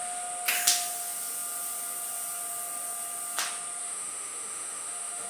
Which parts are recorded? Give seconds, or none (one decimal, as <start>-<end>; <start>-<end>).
0.0-3.8